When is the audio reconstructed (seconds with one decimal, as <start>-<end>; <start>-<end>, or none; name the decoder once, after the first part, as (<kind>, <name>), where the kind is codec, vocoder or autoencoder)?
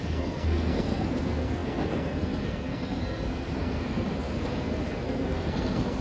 0.0-6.0 (codec, SNAC)